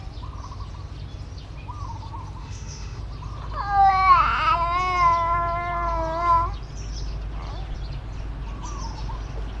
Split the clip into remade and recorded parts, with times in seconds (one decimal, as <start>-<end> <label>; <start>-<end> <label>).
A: 0.0-2.4 recorded; 2.4-3.0 remade; 3.0-9.6 recorded